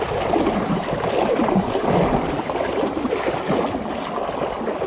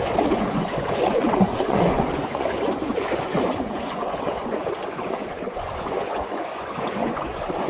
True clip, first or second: first